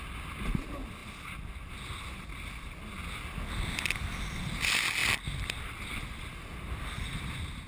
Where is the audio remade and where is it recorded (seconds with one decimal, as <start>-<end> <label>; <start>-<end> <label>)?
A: 0.0-7.7 recorded